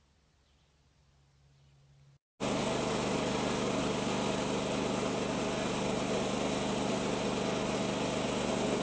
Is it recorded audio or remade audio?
recorded